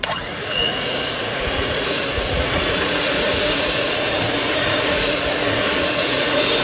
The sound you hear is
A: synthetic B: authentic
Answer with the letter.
A